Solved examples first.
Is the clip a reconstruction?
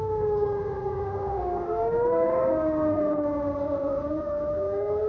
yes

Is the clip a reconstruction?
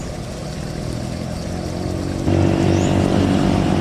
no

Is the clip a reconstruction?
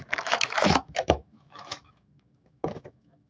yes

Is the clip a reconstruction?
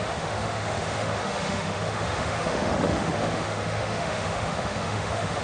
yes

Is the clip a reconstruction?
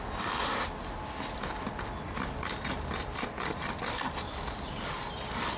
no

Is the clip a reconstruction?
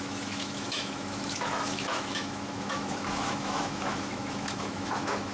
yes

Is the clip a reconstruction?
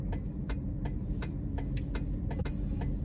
no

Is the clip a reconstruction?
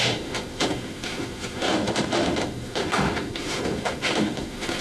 yes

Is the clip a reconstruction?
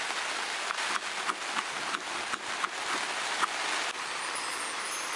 no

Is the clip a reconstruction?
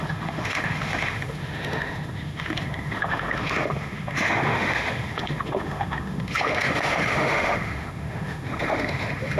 yes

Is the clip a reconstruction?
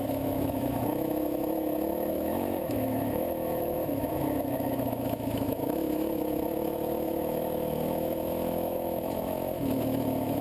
yes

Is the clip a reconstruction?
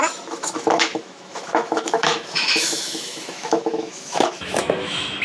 yes